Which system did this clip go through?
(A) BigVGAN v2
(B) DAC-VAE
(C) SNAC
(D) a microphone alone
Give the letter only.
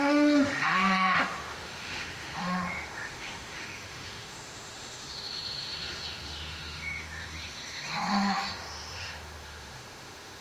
B